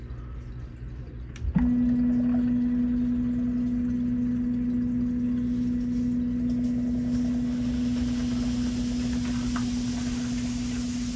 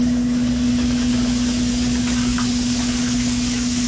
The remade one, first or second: second